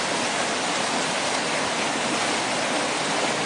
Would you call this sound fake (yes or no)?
no